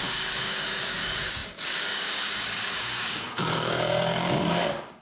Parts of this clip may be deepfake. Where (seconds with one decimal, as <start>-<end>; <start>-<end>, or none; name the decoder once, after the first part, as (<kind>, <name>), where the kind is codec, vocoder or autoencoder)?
0.0-5.0 (codec, DAC)